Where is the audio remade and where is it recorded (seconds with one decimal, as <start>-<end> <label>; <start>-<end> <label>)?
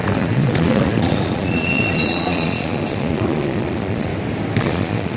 0.0-4.1 remade; 4.1-4.6 recorded; 4.6-5.2 remade